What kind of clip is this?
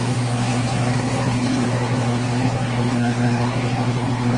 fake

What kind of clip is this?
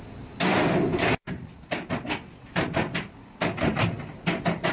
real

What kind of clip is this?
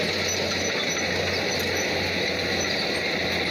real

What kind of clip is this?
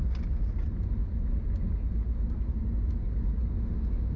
real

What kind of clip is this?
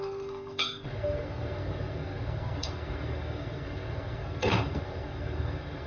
fake